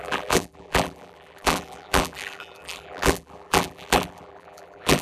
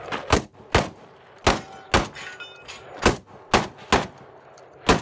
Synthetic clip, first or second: first